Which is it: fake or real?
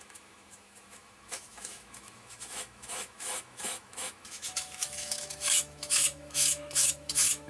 fake